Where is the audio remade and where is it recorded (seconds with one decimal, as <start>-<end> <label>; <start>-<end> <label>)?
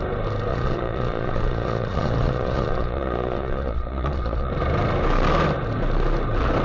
0.0-0.5 recorded; 0.5-4.5 remade; 4.5-6.6 recorded